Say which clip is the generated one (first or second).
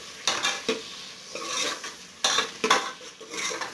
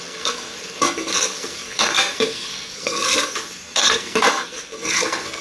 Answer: second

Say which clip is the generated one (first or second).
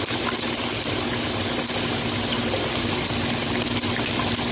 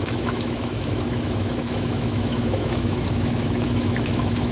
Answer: second